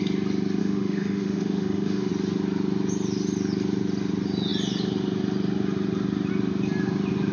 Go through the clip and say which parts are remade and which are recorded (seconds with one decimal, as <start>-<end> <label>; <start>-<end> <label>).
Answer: 0.0-0.6 recorded; 0.6-2.1 remade; 2.1-7.3 recorded